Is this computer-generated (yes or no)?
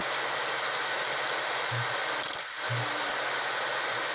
no